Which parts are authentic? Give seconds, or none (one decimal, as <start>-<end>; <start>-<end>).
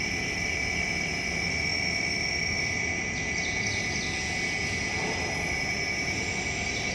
0.0-6.9